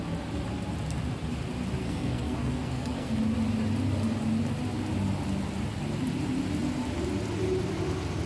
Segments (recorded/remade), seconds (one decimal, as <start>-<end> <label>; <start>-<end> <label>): 0.0-1.8 recorded; 1.8-3.2 remade; 3.2-8.3 recorded